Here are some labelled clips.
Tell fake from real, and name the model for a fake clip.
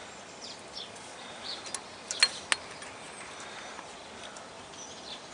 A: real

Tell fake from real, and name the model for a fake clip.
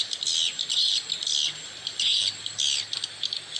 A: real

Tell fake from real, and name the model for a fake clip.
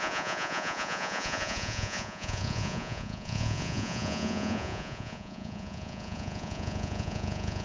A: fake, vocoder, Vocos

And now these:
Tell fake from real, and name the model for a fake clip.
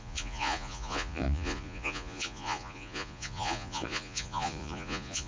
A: fake, vocoder, Vocos